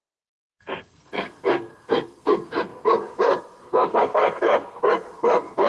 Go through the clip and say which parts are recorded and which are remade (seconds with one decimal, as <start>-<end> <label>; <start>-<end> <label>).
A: 0.0-5.7 remade